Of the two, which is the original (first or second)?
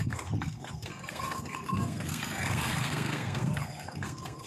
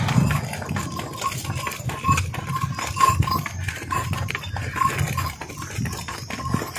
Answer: second